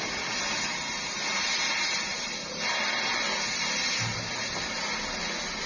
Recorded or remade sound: recorded